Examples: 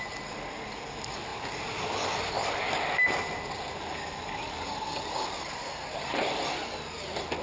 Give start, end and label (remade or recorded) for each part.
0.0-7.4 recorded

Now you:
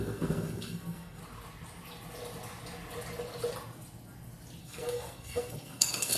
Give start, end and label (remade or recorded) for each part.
0.0-1.2 remade; 1.2-4.6 recorded; 4.6-6.2 remade